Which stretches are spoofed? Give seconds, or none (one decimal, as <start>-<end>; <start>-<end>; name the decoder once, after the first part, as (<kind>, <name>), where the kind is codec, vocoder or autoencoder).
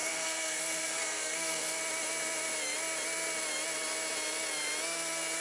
0.0-1.8 (codec, SNAC)